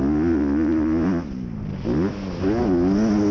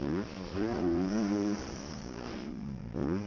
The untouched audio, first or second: first